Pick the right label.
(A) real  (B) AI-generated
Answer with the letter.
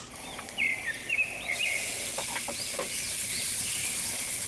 A